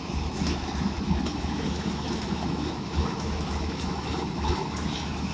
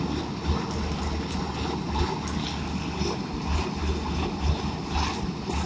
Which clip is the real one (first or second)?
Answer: second